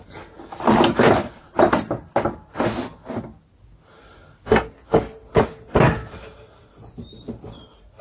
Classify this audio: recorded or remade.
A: recorded